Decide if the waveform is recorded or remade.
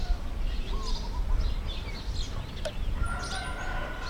recorded